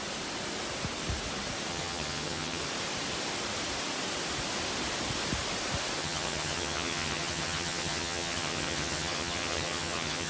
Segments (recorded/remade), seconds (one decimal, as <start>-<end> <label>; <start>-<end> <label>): 0.0-1.7 recorded; 1.7-2.6 remade; 2.6-6.0 recorded; 6.0-10.3 remade